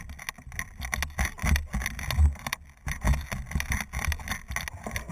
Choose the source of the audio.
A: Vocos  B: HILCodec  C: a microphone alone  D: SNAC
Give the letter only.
C